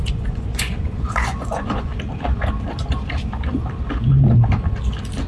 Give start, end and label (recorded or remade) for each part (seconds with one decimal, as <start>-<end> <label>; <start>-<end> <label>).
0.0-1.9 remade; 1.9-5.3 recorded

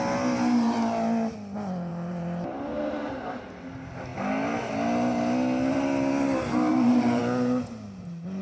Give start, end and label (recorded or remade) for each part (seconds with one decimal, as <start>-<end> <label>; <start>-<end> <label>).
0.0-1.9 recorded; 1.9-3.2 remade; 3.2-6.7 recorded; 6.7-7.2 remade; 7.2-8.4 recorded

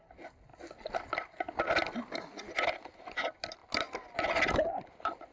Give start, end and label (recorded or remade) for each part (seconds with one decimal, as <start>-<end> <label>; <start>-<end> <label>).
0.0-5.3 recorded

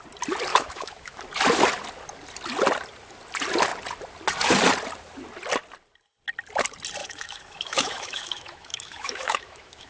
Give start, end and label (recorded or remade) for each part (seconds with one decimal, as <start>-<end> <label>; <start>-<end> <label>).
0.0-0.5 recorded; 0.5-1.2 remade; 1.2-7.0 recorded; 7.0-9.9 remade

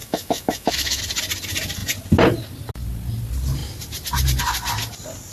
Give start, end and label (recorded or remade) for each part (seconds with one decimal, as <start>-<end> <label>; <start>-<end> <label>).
0.0-1.0 remade; 1.0-5.3 recorded

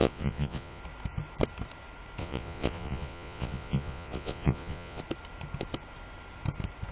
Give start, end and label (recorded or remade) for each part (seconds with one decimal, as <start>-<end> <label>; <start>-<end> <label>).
0.0-0.8 remade; 0.8-2.2 recorded; 2.2-5.0 remade; 5.0-6.9 recorded

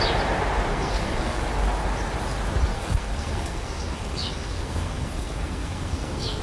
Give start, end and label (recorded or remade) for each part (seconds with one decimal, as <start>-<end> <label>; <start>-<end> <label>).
0.0-0.7 recorded; 0.7-1.4 remade; 1.4-2.7 recorded; 2.7-6.4 remade

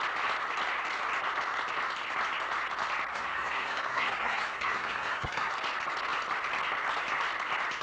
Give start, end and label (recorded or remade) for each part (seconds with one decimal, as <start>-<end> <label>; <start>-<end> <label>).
0.0-3.1 recorded; 3.1-5.5 remade; 5.5-7.8 recorded